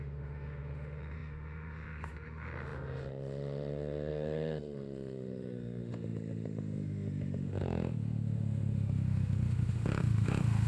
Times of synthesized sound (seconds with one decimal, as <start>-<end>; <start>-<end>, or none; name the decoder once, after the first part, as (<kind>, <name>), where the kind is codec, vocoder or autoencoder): 0.0-10.7 (autoencoder, DAC-VAE)